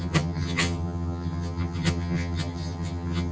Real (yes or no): no